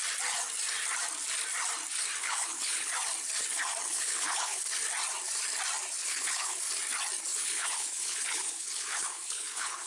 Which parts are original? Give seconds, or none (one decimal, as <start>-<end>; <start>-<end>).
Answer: 0.0-2.2; 2.9-3.9; 4.6-6.0; 6.6-7.3